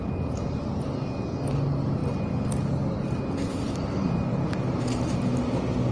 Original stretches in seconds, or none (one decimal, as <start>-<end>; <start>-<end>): 0.0-5.9